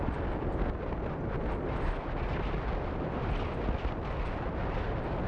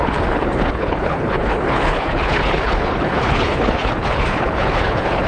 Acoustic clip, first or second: first